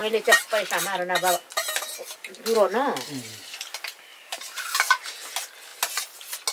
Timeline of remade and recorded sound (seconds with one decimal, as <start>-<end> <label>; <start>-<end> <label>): 0.0-4.1 recorded; 4.1-5.2 remade; 5.2-6.5 recorded